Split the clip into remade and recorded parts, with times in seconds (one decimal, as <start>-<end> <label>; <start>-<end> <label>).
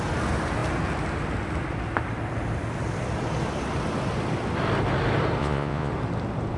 0.0-5.4 recorded; 5.4-5.9 remade; 5.9-6.6 recorded